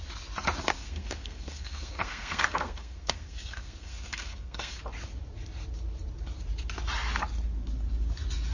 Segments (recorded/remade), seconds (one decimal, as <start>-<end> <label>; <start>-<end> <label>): 0.0-0.7 recorded; 0.7-4.8 remade; 4.8-8.5 recorded